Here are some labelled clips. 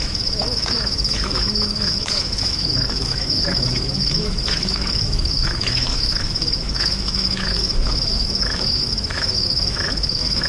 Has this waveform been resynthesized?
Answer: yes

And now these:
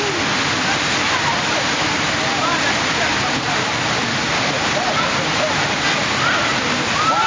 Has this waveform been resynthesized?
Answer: no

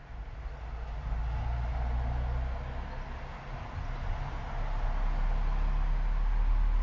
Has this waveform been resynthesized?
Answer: no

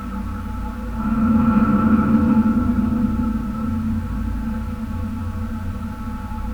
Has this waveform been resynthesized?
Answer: no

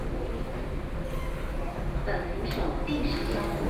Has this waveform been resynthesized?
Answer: no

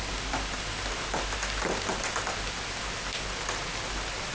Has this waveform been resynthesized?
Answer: no